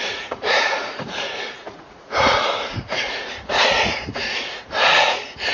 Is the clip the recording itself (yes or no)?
no